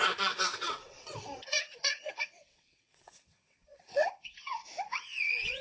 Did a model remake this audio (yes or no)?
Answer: yes